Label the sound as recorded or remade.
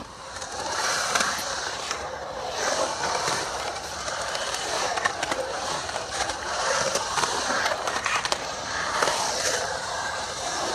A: remade